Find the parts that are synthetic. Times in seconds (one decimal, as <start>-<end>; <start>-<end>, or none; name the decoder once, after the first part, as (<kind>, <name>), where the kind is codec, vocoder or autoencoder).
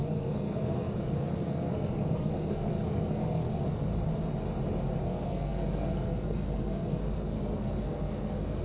0.0-3.9 (codec, SNAC); 5.0-8.6